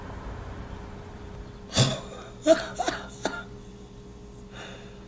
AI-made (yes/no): no